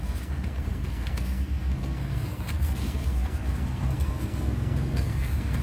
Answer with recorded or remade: remade